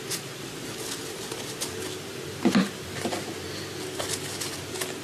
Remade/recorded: recorded